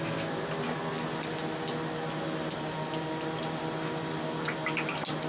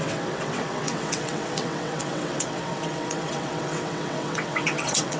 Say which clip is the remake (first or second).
second